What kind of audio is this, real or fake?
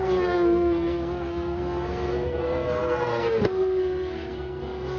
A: fake